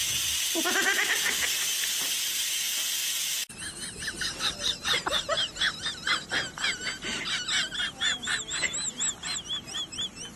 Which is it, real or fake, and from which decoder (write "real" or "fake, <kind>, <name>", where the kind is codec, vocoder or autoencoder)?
real